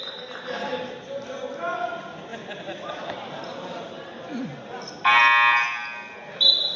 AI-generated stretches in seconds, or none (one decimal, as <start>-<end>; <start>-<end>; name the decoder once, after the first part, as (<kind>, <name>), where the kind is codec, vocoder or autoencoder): none